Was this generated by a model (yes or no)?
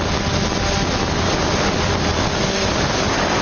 no